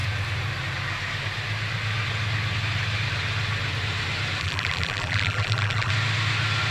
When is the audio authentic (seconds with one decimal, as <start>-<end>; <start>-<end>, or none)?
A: 0.0-4.4; 5.9-6.7